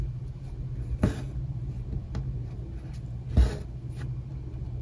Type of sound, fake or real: real